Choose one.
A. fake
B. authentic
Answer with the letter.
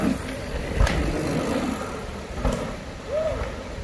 B